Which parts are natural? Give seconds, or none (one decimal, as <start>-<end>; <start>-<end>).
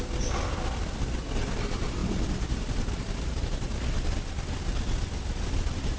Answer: 0.0-6.0